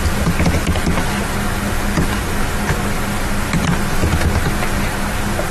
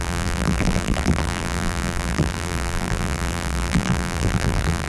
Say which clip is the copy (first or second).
second